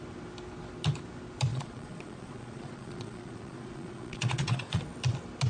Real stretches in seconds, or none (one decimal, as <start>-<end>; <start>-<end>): 0.0-1.5; 4.8-5.5